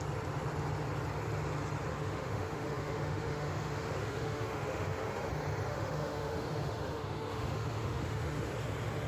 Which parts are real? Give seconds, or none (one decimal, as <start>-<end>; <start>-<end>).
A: 0.0-1.9; 5.3-5.7; 8.5-9.1